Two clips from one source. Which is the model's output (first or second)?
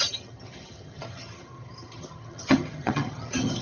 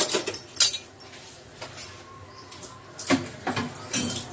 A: first